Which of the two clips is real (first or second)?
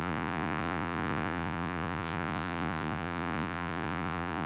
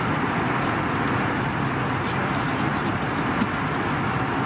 second